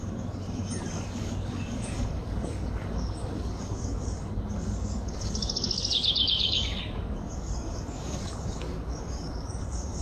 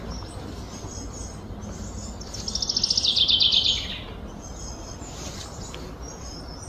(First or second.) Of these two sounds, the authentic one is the second